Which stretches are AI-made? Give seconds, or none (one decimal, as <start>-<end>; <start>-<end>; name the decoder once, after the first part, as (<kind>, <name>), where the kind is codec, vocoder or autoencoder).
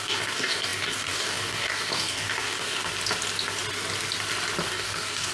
0.0-2.9 (codec, DAC); 4.6-5.3